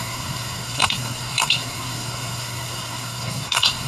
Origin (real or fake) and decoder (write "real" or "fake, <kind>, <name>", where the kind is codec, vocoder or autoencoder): fake, codec, SNAC